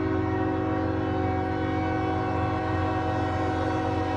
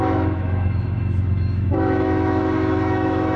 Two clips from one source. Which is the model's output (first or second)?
second